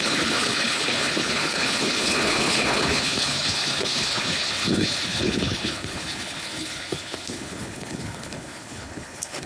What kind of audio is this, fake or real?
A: fake